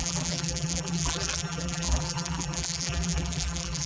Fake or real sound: fake